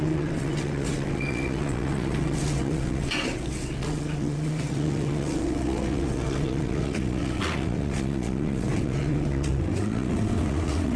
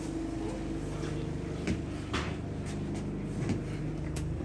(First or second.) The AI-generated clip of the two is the first